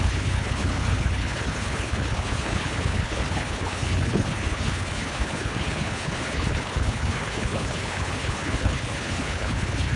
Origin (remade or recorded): remade